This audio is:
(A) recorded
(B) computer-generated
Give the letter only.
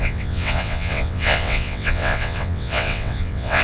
B